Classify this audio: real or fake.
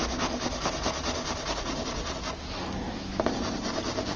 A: real